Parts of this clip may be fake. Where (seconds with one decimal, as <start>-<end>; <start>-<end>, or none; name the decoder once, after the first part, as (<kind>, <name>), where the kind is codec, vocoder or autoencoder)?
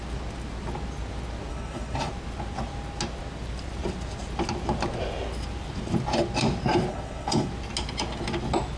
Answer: 1.5-2.1 (codec, HILCodec); 6.9-7.5